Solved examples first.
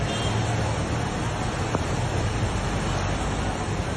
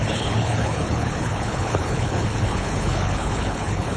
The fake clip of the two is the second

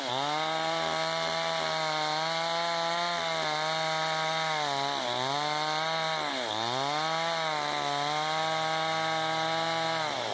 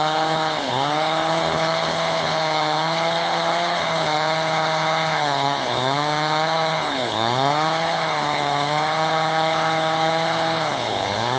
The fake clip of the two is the second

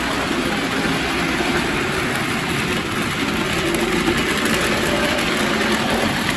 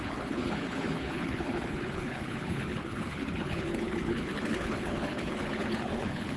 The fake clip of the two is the second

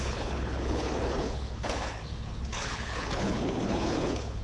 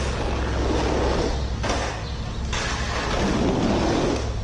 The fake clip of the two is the first